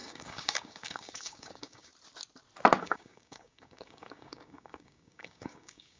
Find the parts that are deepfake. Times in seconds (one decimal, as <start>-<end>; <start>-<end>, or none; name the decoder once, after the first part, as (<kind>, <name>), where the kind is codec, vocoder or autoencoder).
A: 0.0-1.9 (codec, DAC); 2.8-6.0